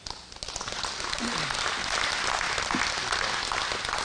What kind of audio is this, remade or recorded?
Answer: recorded